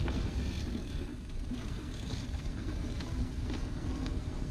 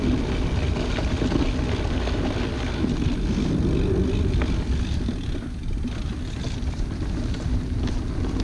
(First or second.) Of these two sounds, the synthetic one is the first